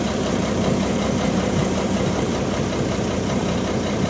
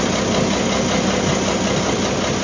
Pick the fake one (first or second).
first